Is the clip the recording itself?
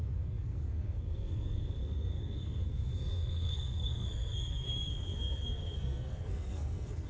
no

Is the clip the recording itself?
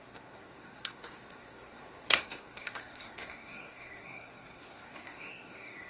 no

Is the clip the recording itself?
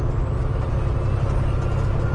yes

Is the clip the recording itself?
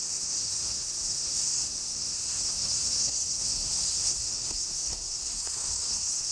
no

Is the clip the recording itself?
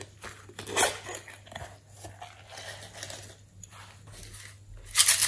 yes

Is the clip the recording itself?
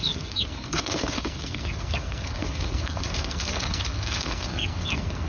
no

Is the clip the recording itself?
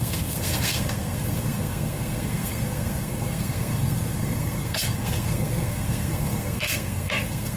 no